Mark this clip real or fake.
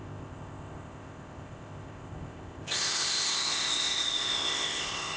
fake